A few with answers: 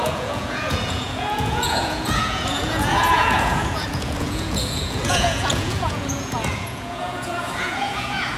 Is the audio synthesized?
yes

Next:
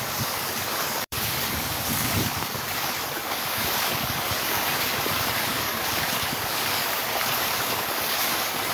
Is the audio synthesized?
yes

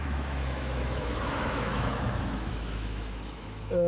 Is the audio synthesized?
yes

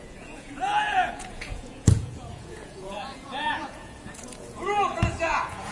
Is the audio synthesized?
yes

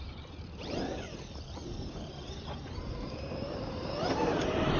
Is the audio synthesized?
yes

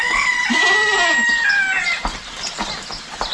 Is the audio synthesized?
no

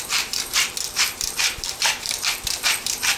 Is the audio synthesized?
yes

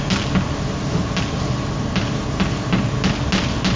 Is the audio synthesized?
no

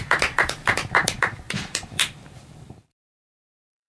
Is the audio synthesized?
yes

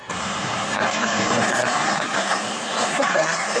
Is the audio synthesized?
yes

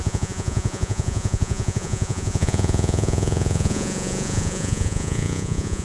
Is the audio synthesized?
yes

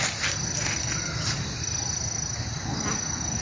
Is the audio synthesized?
no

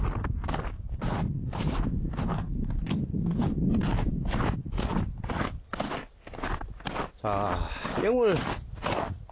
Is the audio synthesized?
no